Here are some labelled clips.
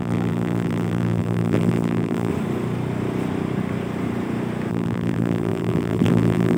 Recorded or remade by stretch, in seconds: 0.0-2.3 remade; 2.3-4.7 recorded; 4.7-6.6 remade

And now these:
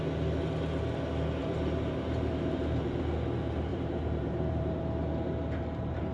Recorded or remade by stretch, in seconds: 0.0-1.4 recorded; 1.4-2.9 remade; 2.9-3.7 recorded; 3.7-4.8 remade; 4.8-6.1 recorded

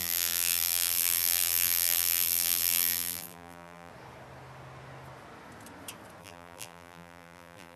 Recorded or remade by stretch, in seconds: 0.0-3.9 remade; 3.9-6.2 recorded; 6.2-7.8 remade

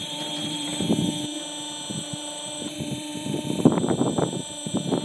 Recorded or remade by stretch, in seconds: 0.0-0.7 remade; 0.7-2.0 recorded; 2.0-5.0 remade

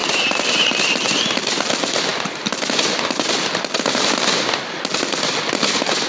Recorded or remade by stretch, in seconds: 0.0-0.8 remade; 0.8-6.1 recorded